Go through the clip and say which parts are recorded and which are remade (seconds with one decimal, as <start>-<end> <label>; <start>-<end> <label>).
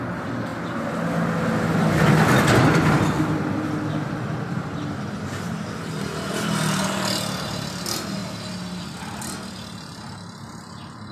0.0-8.2 recorded; 8.2-10.0 remade; 10.0-11.1 recorded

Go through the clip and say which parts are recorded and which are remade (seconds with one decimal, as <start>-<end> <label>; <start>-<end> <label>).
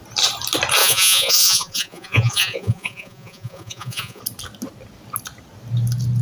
0.0-0.8 recorded; 0.8-4.2 remade; 4.2-6.2 recorded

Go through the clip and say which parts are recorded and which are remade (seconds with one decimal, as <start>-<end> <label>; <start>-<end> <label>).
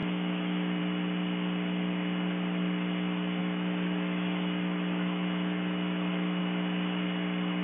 0.0-0.8 remade; 0.8-3.4 recorded; 3.4-6.4 remade; 6.4-7.6 recorded